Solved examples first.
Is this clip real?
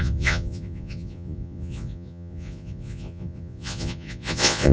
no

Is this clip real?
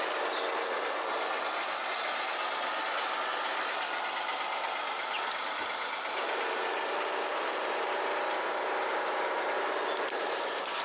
yes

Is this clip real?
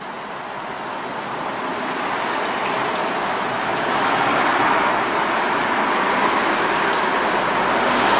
yes